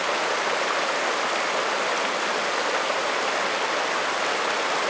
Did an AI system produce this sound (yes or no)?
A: no